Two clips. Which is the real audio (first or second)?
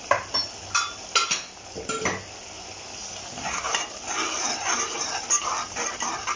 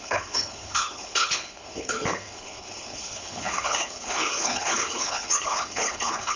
first